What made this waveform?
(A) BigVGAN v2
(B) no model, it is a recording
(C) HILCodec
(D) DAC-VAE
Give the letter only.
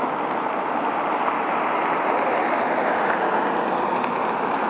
B